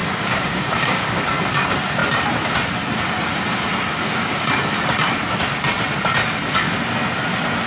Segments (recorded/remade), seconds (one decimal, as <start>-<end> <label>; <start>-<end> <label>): 0.0-1.3 remade; 1.3-7.7 recorded